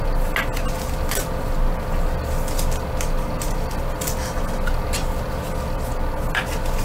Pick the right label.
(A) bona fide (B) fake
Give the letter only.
A